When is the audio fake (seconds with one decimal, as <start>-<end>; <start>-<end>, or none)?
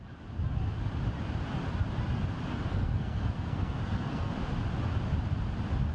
2.7-4.3